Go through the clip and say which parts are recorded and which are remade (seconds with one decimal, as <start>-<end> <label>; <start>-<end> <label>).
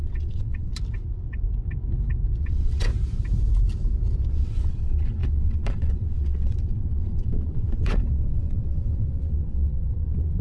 0.0-0.7 remade; 0.7-2.4 recorded; 2.4-2.9 remade; 2.9-4.3 recorded; 4.3-10.4 remade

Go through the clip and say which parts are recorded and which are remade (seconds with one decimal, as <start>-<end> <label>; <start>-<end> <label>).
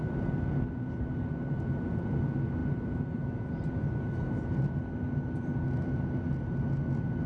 0.0-7.3 recorded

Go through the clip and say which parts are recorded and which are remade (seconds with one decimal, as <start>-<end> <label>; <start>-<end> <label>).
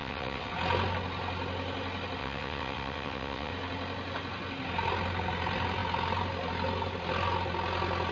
0.0-0.5 remade; 0.5-2.2 recorded; 2.2-3.5 remade; 3.5-8.1 recorded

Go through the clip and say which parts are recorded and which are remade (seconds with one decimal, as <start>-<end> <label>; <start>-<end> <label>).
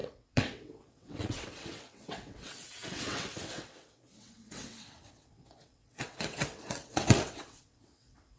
0.0-8.4 remade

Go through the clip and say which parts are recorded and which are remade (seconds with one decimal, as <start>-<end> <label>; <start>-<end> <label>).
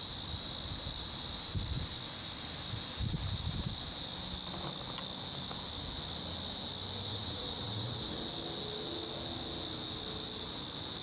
0.0-7.1 recorded; 7.1-8.3 remade; 8.3-11.0 recorded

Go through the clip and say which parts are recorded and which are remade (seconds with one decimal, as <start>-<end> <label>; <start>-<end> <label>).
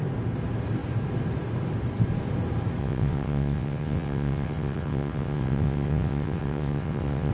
0.0-2.8 recorded; 2.8-7.3 remade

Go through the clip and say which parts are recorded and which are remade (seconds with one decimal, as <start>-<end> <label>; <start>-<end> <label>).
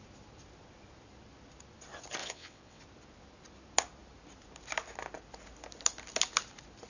0.0-2.2 recorded; 2.2-2.8 remade; 2.8-6.9 recorded